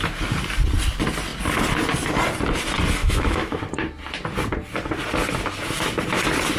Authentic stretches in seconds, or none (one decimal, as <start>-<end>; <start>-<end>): 0.0-3.0; 3.6-6.6